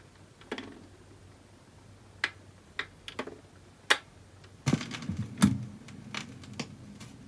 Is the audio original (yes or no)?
yes